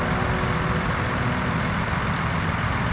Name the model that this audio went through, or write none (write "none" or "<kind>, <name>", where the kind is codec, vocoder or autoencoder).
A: none